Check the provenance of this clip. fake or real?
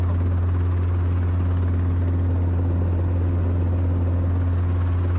real